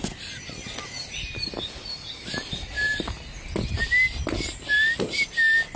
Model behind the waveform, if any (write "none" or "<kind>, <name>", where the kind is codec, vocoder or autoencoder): none